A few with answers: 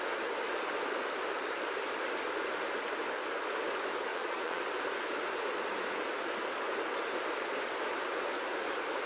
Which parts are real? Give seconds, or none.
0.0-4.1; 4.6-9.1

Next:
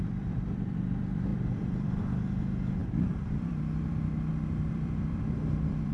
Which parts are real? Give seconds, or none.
none

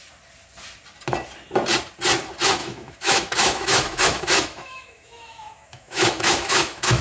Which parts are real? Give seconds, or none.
0.0-2.6